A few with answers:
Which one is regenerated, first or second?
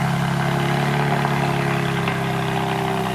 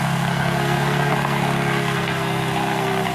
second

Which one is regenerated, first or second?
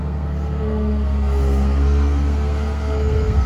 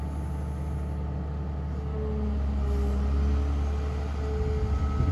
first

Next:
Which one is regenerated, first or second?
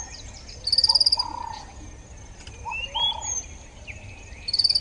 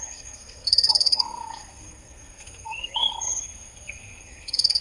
second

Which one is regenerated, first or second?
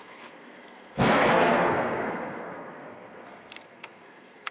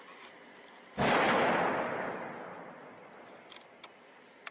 first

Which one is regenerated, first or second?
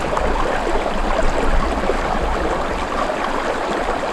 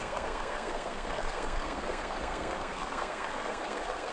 second